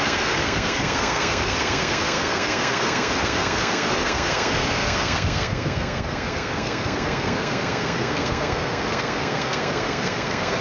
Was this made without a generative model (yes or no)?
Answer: no